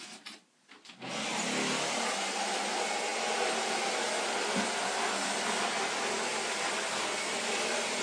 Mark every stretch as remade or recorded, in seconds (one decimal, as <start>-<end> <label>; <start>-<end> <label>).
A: 0.0-8.0 recorded